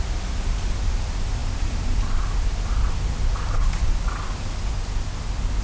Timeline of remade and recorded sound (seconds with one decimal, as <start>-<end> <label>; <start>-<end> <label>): 0.0-5.6 recorded

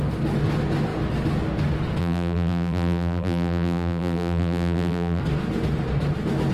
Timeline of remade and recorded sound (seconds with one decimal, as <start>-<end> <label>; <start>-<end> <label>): 0.0-2.0 recorded; 2.0-5.2 remade; 5.2-6.5 recorded